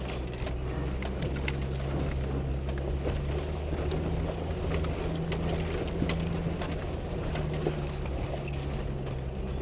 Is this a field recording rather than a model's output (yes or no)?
yes